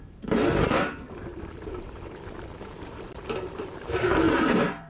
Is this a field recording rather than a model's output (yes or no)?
no